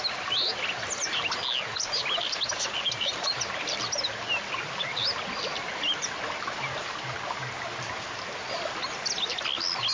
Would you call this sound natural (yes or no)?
yes